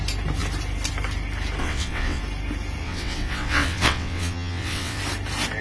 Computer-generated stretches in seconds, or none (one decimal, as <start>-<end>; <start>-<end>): 1.6-2.2; 2.8-5.0